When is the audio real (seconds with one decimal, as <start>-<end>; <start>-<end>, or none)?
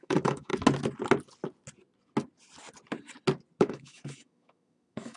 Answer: 0.5-3.6